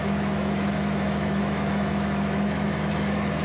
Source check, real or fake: fake